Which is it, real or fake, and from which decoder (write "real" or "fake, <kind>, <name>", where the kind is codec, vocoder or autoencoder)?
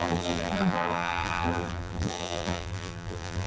fake, vocoder, BigVGAN v2